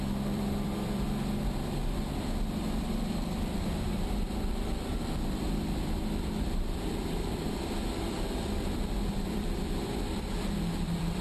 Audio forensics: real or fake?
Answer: fake